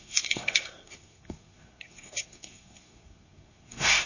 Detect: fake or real fake